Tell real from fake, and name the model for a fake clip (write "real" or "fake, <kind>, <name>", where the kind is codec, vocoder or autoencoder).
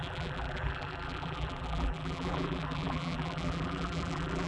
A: fake, vocoder, BigVGAN v2